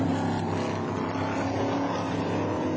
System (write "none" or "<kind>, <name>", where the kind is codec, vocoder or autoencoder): none